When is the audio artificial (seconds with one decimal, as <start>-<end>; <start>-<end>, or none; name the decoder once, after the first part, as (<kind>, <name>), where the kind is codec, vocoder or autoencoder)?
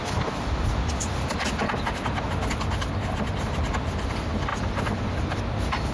none